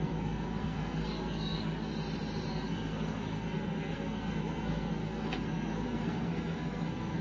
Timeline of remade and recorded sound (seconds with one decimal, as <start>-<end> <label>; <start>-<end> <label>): 0.0-1.9 remade; 1.9-2.5 recorded; 2.5-7.2 remade